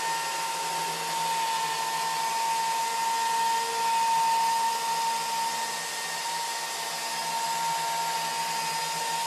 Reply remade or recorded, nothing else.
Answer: recorded